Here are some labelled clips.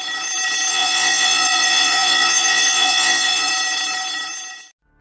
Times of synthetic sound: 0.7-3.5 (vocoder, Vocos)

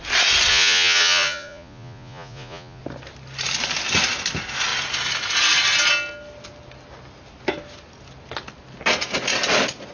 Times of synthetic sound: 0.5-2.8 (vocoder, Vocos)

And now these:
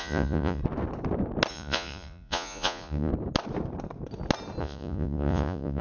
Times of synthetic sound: 0.0-0.6 (vocoder, Vocos); 1.5-3.1; 4.6-5.8

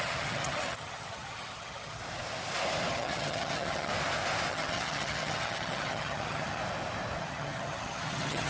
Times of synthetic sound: 0.0-2.0 (vocoder, HiFi-GAN); 2.9-3.9; 4.5-6.6; 7.2-8.5

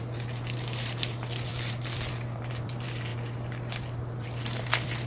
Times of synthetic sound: none

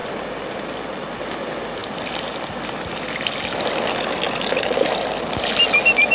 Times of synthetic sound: none

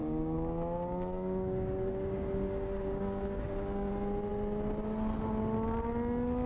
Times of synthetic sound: 0.0-3.9 (codec, DAC)